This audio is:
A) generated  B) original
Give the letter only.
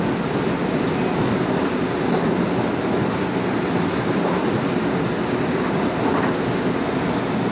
B